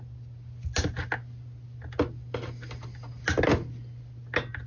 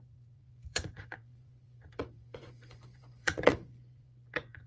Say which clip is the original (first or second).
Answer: first